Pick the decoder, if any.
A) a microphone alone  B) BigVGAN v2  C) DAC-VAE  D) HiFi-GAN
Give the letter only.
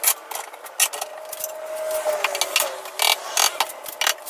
A